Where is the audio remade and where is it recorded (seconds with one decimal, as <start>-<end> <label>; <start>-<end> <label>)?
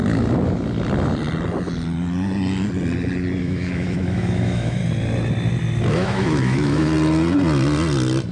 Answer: 0.0-3.4 recorded; 3.4-4.8 remade; 4.8-5.9 recorded; 5.9-6.9 remade; 6.9-8.3 recorded